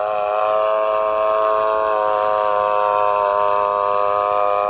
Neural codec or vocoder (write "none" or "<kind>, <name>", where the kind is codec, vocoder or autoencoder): none